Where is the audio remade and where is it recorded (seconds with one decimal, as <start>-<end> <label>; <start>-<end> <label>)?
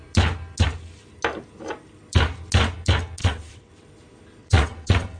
0.0-3.2 recorded; 3.2-3.7 remade; 3.7-4.4 recorded; 4.4-5.2 remade